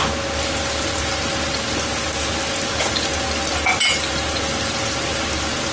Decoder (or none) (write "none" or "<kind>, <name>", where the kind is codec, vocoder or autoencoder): none